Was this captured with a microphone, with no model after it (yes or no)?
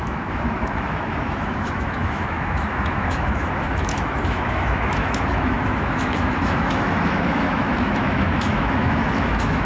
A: no